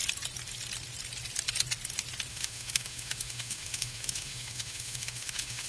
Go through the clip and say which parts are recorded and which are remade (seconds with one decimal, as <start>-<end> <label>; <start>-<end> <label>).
0.0-2.3 recorded; 2.3-5.7 remade